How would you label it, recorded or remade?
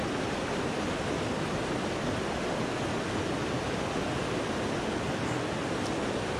recorded